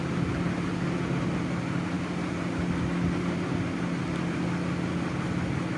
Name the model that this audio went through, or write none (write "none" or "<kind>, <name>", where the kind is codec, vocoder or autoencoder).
none